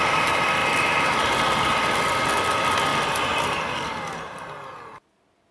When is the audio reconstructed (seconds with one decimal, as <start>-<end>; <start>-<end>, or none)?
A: none

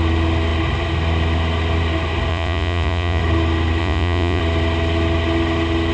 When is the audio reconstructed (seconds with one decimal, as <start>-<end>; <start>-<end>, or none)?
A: 2.3-3.2; 3.8-4.4

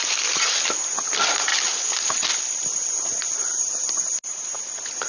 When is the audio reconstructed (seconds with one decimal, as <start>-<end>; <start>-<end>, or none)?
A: none

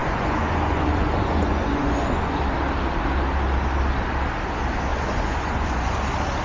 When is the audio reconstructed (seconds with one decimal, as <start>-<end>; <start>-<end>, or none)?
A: 0.0-2.4; 4.9-6.0

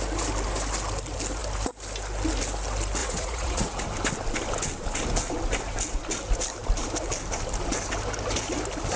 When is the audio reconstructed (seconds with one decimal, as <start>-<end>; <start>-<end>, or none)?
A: 3.0-3.8

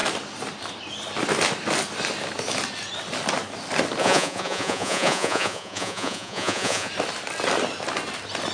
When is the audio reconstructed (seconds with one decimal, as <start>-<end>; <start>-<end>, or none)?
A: 4.0-6.9